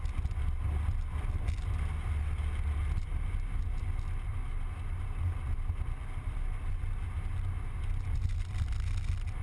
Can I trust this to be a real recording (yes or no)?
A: yes